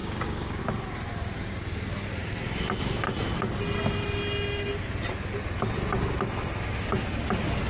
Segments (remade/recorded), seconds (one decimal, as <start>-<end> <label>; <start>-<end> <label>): 0.0-0.6 remade; 0.6-7.7 recorded